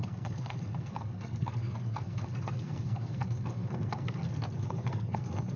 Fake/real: fake